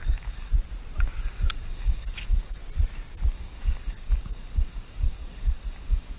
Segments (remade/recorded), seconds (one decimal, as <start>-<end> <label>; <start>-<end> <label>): 0.0-0.5 remade; 0.5-1.2 recorded; 1.2-2.6 remade; 2.6-3.3 recorded; 3.3-6.2 remade